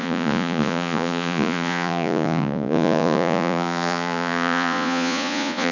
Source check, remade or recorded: remade